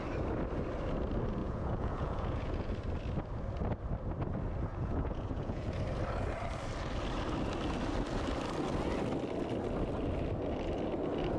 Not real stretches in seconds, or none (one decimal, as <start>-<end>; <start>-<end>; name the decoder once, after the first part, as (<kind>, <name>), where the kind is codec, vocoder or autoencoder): 1.4-2.7 (vocoder, Vocos); 4.7-5.7